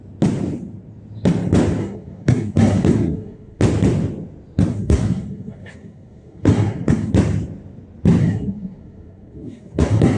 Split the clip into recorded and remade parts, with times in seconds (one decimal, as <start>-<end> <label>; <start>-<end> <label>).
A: 0.0-1.8 recorded; 1.8-3.6 remade; 3.6-4.7 recorded; 4.7-7.1 remade; 7.1-8.2 recorded; 8.2-10.2 remade